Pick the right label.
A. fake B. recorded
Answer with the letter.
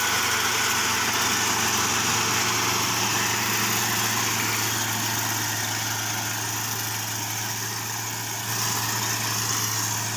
B